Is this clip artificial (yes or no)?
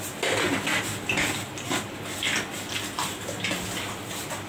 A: no